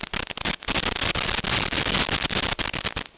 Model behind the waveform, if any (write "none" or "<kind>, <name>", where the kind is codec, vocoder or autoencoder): none